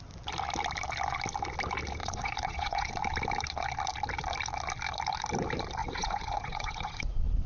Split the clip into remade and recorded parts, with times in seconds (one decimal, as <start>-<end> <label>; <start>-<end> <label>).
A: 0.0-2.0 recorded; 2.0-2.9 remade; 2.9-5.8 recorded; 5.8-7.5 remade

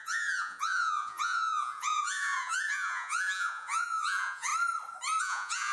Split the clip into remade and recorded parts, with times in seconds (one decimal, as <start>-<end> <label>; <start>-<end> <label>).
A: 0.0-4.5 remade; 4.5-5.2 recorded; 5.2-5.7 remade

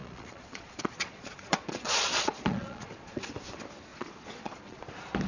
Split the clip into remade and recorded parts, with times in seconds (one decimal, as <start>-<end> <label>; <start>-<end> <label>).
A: 0.0-3.2 remade; 3.2-3.9 recorded; 3.9-4.8 remade; 4.8-5.3 recorded

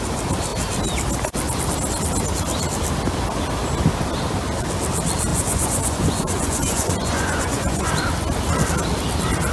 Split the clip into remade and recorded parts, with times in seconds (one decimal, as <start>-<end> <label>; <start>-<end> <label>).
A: 0.0-5.3 recorded; 5.3-7.9 remade; 7.9-9.5 recorded

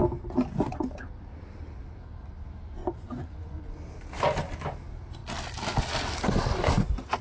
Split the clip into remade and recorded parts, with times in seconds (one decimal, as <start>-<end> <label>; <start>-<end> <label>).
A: 0.0-2.8 recorded; 2.8-3.6 remade; 3.6-7.2 recorded

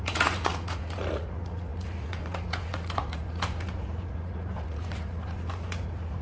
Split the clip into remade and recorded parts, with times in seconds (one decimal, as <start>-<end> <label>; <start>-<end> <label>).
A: 0.0-6.2 remade

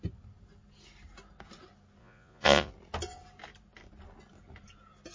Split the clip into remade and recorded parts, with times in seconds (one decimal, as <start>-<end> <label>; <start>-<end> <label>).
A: 0.0-2.0 recorded; 2.0-2.7 remade; 2.7-5.1 recorded